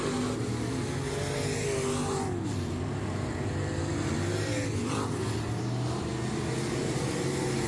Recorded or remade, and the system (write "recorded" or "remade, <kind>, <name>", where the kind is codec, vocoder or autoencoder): recorded